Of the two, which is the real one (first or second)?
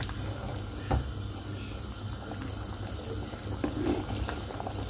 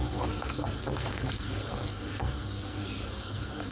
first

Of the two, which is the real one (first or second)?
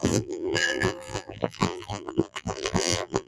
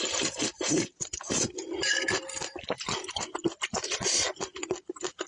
second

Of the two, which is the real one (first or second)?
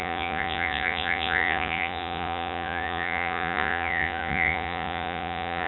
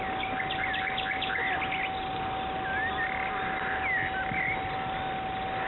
second